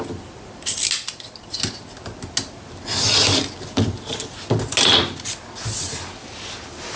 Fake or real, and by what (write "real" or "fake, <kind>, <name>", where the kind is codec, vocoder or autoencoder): real